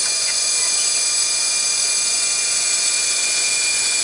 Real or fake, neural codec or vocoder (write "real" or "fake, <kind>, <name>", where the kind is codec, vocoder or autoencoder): fake, vocoder, Vocos